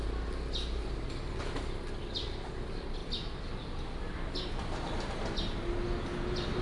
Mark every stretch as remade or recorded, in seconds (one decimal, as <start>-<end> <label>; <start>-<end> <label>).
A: 0.0-6.6 recorded

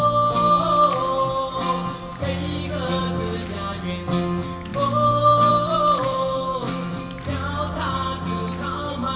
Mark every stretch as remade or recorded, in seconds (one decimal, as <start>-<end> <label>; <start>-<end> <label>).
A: 0.0-6.0 recorded; 6.0-6.9 remade; 6.9-9.2 recorded

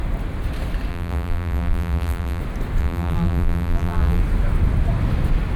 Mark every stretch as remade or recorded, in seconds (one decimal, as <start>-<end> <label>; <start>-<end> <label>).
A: 0.0-0.9 recorded; 0.9-2.4 remade; 2.4-2.8 recorded; 2.8-4.2 remade; 4.2-5.6 recorded

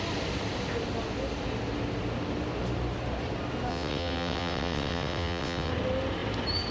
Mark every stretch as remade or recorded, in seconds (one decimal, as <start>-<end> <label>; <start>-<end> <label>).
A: 0.0-3.7 recorded; 3.7-5.7 remade; 5.7-6.7 recorded

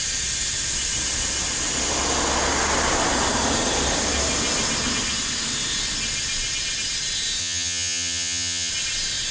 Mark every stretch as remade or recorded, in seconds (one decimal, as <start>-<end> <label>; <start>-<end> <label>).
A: 0.0-7.4 recorded; 7.4-8.7 remade; 8.7-9.3 recorded

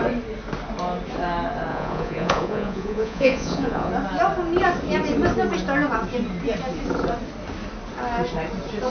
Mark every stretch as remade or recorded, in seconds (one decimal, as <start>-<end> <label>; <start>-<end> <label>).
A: 0.0-1.7 recorded; 1.7-3.9 remade; 3.9-8.9 recorded